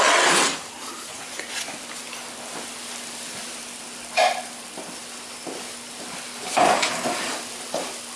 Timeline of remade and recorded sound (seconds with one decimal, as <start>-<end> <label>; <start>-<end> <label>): 0.0-1.1 recorded; 1.1-1.7 remade; 1.7-8.2 recorded